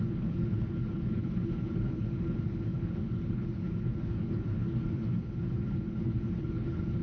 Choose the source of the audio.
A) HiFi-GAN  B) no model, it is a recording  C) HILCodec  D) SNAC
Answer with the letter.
C